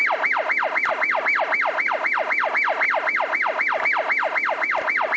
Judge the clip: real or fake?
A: real